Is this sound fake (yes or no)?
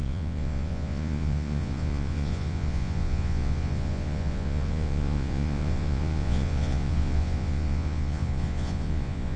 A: yes